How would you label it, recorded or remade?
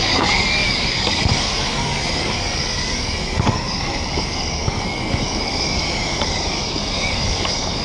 remade